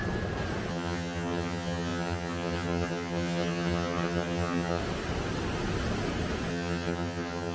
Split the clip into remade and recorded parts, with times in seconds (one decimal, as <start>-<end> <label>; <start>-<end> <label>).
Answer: 0.0-0.7 recorded; 0.7-4.8 remade; 4.8-6.5 recorded; 6.5-7.5 remade